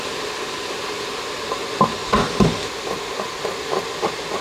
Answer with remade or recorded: recorded